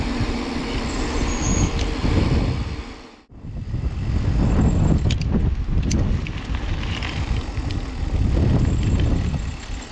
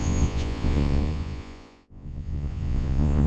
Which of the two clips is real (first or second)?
first